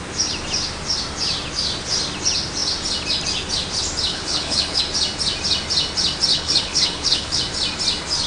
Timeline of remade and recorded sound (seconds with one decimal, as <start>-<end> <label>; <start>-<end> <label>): 0.0-4.1 recorded; 4.1-4.8 remade; 4.8-6.3 recorded; 6.3-7.4 remade; 7.4-8.3 recorded